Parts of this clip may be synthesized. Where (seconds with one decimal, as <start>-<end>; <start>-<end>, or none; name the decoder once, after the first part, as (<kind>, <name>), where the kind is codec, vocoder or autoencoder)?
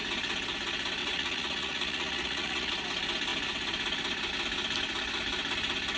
1.0-2.7 (vocoder, Vocos)